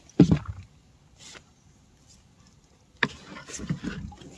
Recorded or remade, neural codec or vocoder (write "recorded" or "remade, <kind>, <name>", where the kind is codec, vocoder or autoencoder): recorded